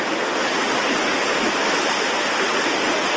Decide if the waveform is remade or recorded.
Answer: recorded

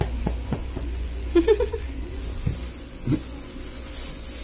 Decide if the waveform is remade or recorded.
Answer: remade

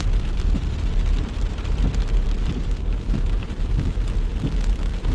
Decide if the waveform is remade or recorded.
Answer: remade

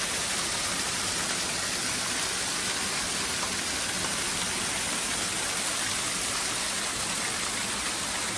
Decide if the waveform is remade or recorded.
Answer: recorded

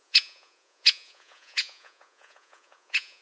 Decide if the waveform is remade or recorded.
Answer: remade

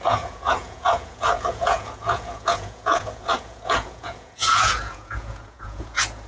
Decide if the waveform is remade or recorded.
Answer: remade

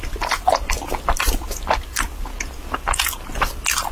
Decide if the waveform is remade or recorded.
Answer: recorded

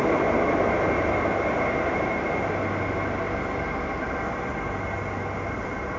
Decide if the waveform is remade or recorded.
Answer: recorded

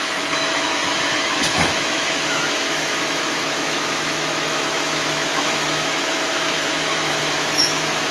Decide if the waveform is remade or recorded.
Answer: remade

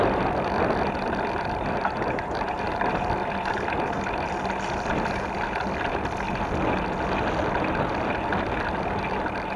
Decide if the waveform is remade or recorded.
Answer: recorded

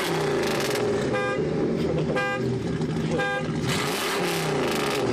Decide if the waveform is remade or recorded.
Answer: recorded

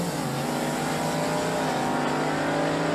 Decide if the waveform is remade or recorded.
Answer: recorded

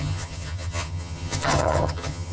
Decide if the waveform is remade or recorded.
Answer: remade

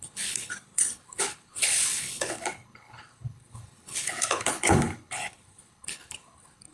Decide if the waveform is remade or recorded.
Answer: remade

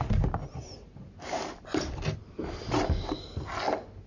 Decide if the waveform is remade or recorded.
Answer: recorded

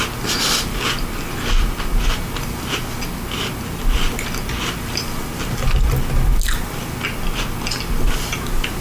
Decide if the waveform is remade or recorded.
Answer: recorded